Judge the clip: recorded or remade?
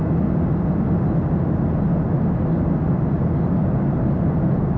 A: recorded